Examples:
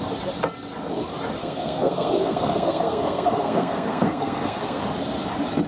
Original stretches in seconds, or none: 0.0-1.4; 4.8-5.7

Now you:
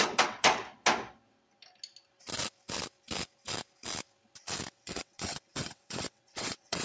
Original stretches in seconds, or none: 0.6-4.7

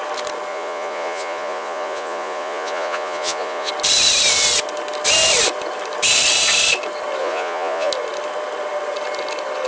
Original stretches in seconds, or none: 0.0-0.5; 3.7-7.2; 7.9-9.7

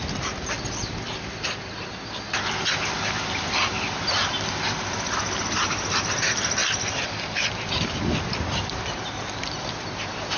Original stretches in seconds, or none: 0.0-6.6

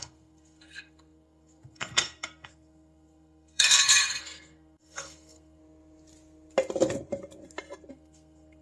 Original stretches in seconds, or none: 5.6-7.9

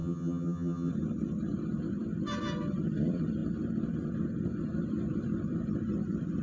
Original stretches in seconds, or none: 0.9-6.4

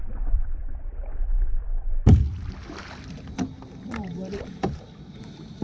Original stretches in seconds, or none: 0.6-4.0

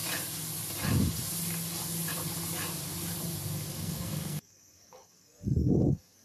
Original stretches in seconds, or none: 0.0-3.7